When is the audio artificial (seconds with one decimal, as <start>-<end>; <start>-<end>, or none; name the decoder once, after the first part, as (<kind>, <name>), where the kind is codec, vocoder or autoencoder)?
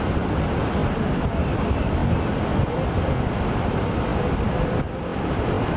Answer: none